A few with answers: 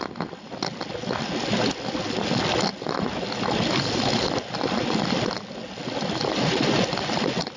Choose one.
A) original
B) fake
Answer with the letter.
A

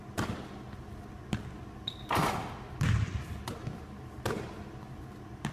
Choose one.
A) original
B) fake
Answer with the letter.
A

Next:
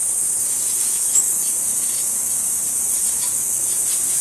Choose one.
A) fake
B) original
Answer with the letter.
A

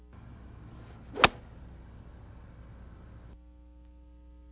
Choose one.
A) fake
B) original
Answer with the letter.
B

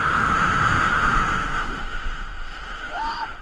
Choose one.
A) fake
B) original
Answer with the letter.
A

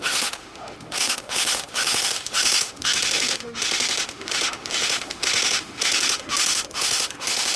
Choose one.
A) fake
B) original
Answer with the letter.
A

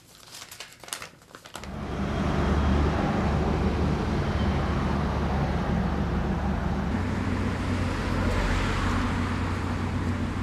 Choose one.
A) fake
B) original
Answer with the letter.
B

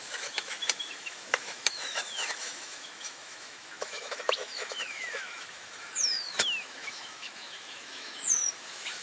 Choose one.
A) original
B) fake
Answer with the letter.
B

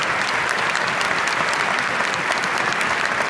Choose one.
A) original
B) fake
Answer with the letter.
A